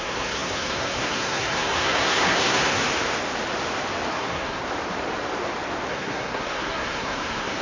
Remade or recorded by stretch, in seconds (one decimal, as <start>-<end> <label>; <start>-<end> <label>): 0.0-2.8 remade; 2.8-4.1 recorded; 4.1-4.6 remade; 4.6-5.9 recorded; 5.9-7.6 remade